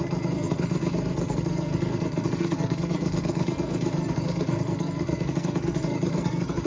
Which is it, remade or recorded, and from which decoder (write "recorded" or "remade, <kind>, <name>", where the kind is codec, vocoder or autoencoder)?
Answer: remade, codec, SNAC